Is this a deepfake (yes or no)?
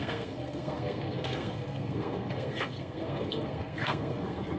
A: yes